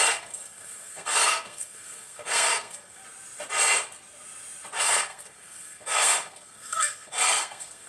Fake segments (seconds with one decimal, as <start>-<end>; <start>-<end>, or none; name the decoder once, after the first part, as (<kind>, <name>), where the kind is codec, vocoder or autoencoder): 0.0-3.0 (codec, SNAC); 4.8-7.9